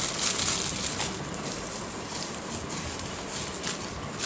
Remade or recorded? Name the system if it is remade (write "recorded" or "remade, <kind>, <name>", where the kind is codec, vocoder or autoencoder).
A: recorded